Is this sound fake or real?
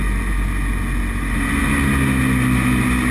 real